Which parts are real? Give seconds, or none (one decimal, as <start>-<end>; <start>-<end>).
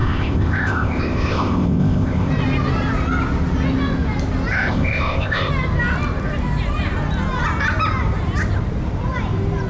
2.3-4.5; 5.5-9.7